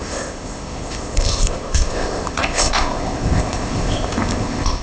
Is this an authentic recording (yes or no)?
no